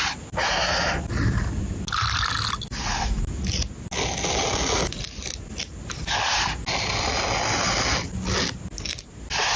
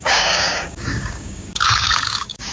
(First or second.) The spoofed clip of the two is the second